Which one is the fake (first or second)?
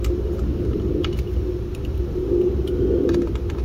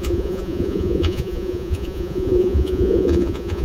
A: second